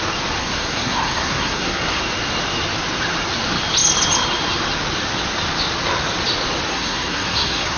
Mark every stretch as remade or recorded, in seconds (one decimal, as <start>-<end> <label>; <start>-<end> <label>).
0.0-0.4 recorded; 0.4-2.0 remade; 2.0-6.7 recorded; 6.7-7.8 remade